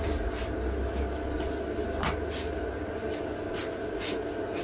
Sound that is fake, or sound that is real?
real